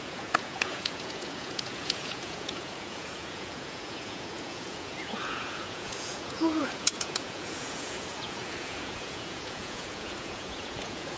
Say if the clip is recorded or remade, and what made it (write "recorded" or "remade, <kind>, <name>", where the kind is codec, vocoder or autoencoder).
remade, vocoder, Vocos